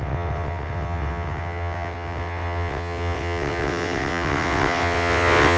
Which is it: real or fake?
fake